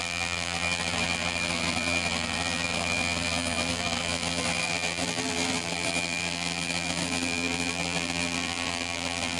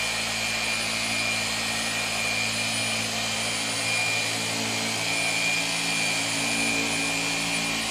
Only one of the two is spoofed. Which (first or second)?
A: first